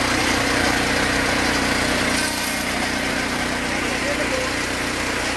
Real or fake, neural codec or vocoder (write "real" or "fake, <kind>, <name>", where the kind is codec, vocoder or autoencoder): real